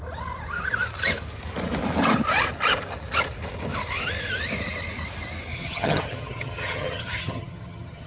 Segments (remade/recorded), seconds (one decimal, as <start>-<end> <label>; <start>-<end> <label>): 0.0-5.5 recorded; 5.5-8.1 remade